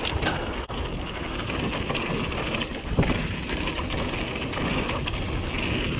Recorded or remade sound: recorded